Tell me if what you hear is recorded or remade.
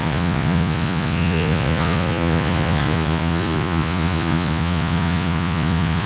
remade